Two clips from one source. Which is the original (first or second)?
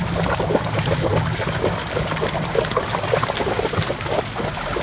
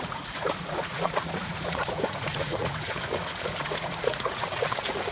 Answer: first